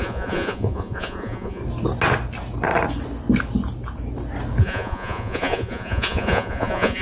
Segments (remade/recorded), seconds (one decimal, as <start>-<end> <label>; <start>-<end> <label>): 0.0-1.6 remade; 1.6-4.6 recorded; 4.6-7.0 remade